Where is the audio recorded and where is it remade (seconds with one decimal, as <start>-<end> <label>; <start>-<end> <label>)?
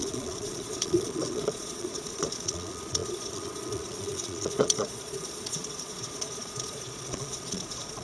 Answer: 0.0-8.0 remade